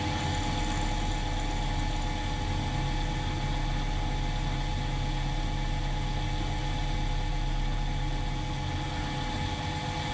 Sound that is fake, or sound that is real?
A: real